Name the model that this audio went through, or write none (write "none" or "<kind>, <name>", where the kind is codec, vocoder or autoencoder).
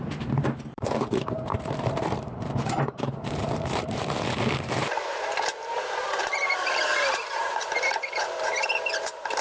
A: vocoder, BigVGAN v2